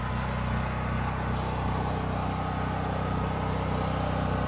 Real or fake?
real